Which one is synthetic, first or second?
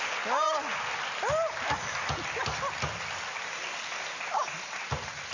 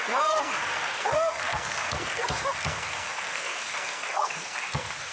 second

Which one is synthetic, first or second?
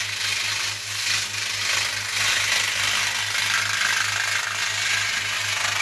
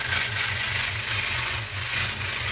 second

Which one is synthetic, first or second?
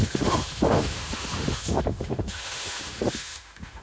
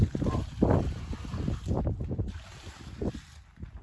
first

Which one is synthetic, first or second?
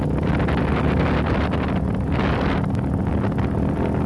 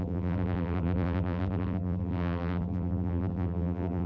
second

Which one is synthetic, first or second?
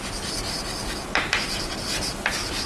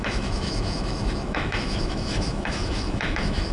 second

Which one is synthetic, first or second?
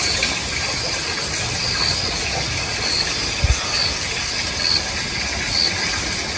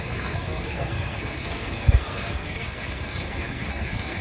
second